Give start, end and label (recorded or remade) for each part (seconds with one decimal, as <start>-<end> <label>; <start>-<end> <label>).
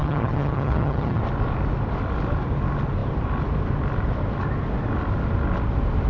0.0-1.2 remade; 1.2-6.1 recorded